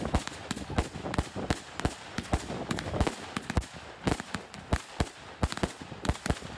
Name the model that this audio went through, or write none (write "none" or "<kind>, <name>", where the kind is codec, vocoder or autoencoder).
none